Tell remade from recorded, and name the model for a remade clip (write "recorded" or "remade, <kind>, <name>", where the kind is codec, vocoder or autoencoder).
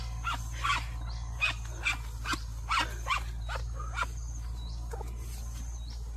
recorded